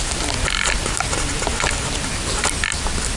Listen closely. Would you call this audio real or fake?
real